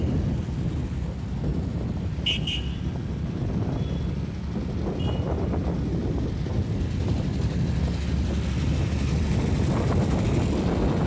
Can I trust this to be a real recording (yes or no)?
yes